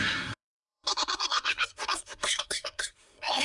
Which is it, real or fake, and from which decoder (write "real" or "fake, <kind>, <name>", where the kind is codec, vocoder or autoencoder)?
fake, codec, SNAC